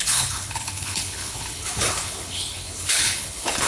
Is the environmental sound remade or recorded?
remade